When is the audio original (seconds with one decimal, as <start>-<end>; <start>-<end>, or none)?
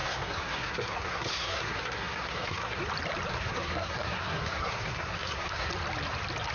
2.8-3.3; 5.7-6.5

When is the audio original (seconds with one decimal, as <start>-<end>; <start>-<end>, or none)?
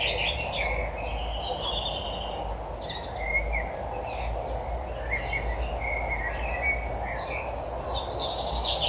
0.0-8.9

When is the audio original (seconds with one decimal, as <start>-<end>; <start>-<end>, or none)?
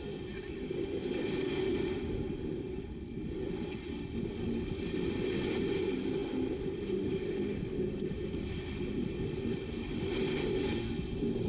0.0-11.5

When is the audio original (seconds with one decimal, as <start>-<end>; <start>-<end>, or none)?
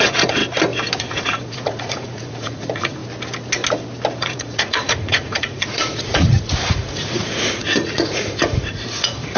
0.4-1.0; 3.0-4.2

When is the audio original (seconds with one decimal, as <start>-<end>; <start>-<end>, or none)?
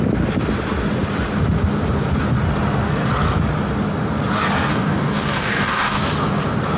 0.0-4.7; 6.1-6.8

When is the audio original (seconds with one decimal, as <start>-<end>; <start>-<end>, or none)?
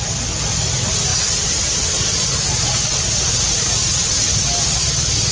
0.0-1.1; 2.7-5.3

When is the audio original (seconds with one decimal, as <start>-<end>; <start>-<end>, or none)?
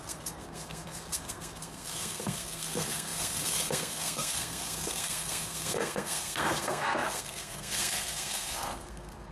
none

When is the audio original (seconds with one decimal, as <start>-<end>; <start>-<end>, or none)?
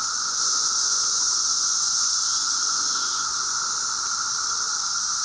3.6-5.2